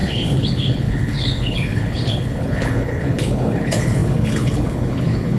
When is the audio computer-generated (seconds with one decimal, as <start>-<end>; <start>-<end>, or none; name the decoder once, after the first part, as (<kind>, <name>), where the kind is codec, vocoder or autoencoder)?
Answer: 0.0-5.4 (codec, HILCodec)